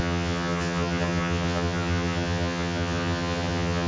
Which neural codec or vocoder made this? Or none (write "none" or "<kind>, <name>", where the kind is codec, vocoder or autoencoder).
vocoder, HiFi-GAN